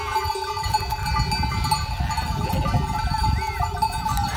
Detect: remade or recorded recorded